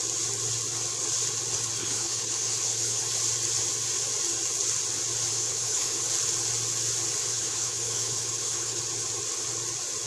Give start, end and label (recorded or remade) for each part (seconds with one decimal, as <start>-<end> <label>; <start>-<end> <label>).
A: 0.0-1.8 recorded; 1.8-3.0 remade; 3.0-5.3 recorded; 5.3-6.0 remade; 6.0-7.3 recorded; 7.3-8.8 remade; 8.8-10.1 recorded